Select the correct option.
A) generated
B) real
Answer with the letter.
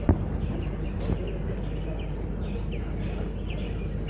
B